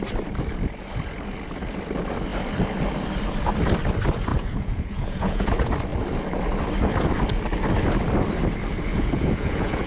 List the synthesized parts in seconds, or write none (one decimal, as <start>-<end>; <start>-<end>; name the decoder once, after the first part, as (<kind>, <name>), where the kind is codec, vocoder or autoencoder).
4.3-5.5 (vocoder, Vocos); 8.9-9.9